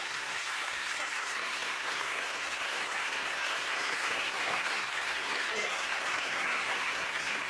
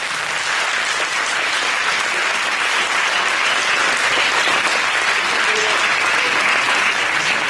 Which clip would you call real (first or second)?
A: second